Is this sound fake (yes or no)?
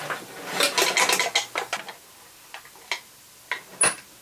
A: no